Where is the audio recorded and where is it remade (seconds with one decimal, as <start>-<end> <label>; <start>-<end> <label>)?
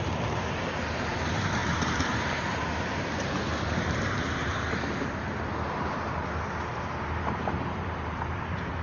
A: 0.0-2.5 remade; 2.5-6.7 recorded; 6.7-8.8 remade